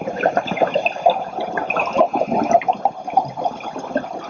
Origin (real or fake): real